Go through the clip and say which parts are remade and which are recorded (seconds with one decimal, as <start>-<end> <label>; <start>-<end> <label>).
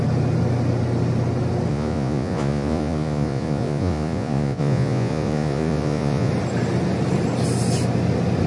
0.0-1.7 recorded; 1.7-6.3 remade; 6.3-8.5 recorded